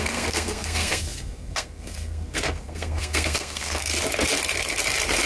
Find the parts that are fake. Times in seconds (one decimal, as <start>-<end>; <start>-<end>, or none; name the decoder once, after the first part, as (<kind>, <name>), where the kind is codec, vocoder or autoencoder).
0.0-3.9 (codec, SNAC)